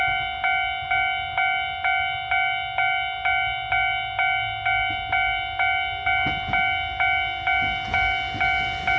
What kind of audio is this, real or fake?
real